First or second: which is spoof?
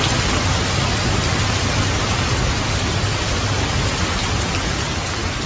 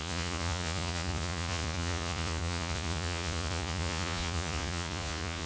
second